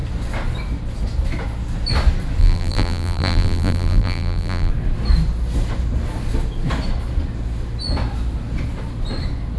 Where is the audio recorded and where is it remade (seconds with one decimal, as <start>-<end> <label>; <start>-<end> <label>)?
0.0-2.4 recorded; 2.4-4.7 remade; 4.7-9.6 recorded